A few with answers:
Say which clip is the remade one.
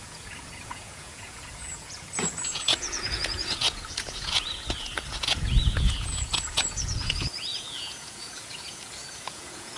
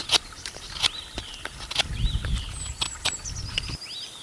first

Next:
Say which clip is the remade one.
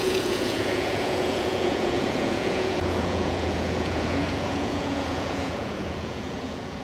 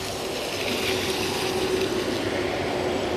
first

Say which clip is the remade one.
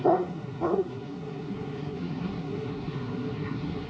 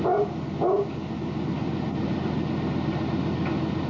first